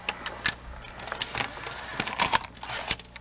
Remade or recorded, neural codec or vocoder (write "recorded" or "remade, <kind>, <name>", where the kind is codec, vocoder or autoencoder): recorded